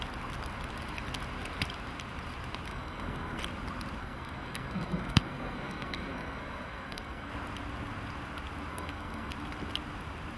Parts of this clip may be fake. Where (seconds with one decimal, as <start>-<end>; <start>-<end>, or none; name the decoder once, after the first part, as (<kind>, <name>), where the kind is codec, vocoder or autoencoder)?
2.7-3.4 (codec, SNAC); 4.0-7.3; 8.7-9.3